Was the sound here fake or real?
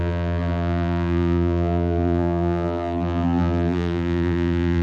fake